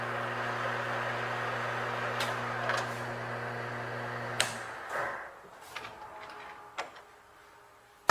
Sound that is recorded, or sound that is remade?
recorded